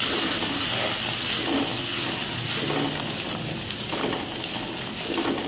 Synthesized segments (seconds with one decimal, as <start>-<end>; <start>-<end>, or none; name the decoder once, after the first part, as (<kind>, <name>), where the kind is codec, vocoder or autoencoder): none